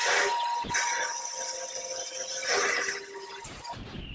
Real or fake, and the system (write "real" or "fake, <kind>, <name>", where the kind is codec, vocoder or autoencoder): fake, vocoder, BigVGAN v2